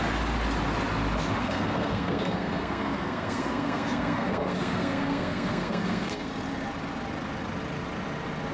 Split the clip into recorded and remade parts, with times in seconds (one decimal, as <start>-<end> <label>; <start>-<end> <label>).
0.0-1.4 recorded; 1.4-6.3 remade; 6.3-8.5 recorded